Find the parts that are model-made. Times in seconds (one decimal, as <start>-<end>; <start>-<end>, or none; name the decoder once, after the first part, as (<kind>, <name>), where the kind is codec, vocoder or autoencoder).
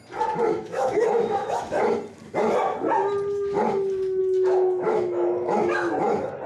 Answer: 0.5-1.8 (autoencoder, DAC-VAE); 4.2-5.9